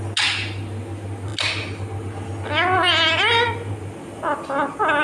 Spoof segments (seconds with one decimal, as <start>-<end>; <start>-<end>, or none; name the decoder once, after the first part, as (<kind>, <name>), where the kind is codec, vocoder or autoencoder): none